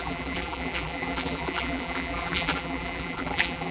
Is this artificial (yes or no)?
yes